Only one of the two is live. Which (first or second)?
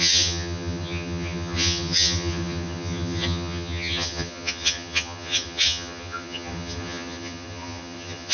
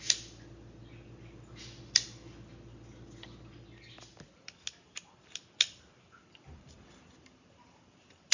second